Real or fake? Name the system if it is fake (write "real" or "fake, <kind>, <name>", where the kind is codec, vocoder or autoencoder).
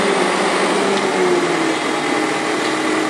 real